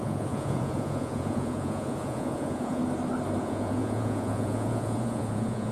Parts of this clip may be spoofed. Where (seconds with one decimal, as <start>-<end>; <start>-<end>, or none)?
0.0-2.8; 3.4-5.7